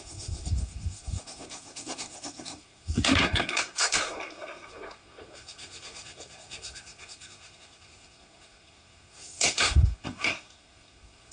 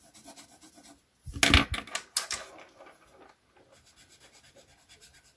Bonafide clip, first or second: second